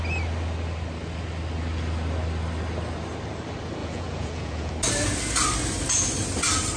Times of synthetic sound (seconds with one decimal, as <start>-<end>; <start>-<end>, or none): 3.8-4.7